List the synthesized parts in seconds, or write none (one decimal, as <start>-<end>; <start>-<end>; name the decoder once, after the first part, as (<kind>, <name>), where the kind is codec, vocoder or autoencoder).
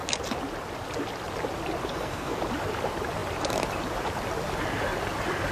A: 1.9-2.4 (codec, SNAC)